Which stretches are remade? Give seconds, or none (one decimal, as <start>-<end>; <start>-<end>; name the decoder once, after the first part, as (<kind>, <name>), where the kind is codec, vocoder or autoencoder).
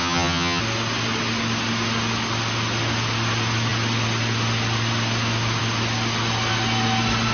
0.0-0.6 (vocoder, HiFi-GAN)